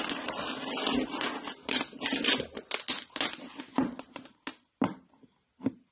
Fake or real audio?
real